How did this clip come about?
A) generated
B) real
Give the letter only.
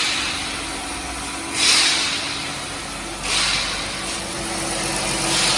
B